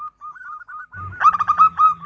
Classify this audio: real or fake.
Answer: real